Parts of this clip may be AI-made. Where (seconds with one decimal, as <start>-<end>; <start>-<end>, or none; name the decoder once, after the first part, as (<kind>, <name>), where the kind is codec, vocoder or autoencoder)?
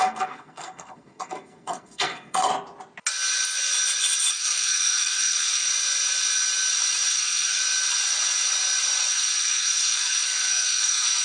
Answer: 0.0-2.5 (codec, SNAC); 4.3-5.7; 7.1-7.6; 9.1-11.2